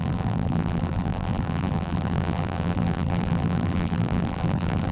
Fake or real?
fake